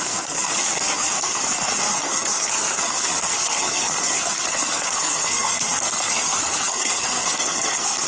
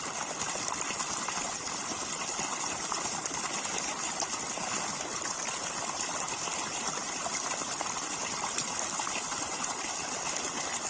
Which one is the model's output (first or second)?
first